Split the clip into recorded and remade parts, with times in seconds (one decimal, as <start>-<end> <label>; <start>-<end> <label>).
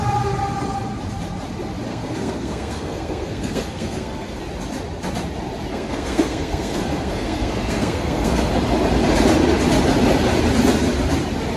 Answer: 0.0-1.9 recorded; 1.9-4.4 remade; 4.4-5.7 recorded; 5.7-8.5 remade; 8.5-11.6 recorded